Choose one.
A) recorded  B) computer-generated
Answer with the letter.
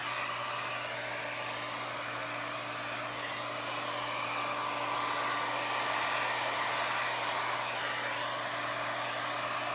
A